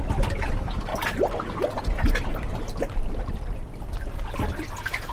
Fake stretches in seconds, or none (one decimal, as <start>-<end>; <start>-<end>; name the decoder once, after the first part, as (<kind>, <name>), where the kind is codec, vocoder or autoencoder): 0.0-0.9 (vocoder, BigVGAN v2); 1.6-5.1